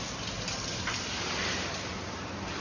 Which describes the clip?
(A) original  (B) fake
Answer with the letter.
A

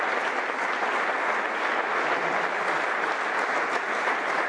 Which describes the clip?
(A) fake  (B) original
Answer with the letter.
B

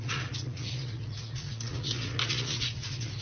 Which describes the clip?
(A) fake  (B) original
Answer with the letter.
A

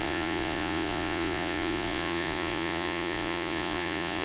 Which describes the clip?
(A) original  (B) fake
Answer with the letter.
B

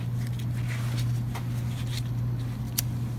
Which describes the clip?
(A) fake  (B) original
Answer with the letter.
B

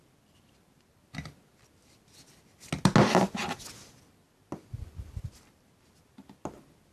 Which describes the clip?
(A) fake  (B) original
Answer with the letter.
B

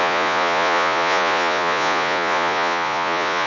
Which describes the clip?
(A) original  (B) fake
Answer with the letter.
B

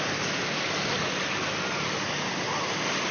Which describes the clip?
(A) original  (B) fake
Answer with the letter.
A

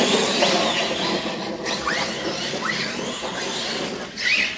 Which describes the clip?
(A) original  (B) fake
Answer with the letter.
A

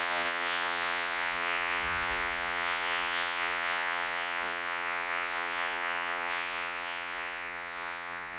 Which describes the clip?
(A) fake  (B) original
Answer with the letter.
A